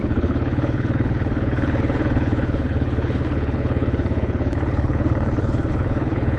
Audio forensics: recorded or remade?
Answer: remade